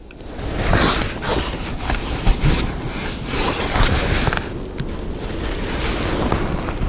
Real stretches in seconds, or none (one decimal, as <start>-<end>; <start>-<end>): 0.0-6.9